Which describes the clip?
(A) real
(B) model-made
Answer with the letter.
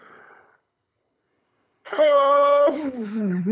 B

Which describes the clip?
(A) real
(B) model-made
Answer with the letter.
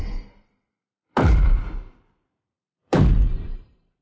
B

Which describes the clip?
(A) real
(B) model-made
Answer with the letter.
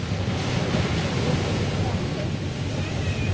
A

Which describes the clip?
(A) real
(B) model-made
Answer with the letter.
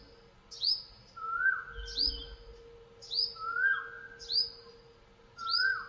A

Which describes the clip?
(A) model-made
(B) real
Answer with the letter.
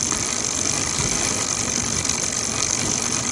A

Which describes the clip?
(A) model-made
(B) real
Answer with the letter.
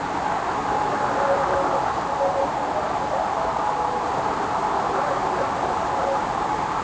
B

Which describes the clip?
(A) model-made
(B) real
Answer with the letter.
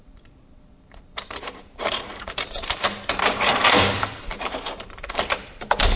A